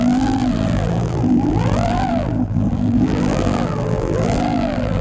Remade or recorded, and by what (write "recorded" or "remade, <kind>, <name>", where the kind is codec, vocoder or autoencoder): remade, vocoder, BigVGAN v2